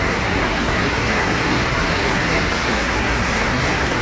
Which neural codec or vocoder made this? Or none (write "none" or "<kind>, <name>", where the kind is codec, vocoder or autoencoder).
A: codec, SNAC